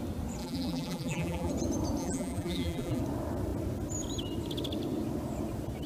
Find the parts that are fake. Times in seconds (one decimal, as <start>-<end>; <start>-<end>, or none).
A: 0.4-1.5; 2.0-3.0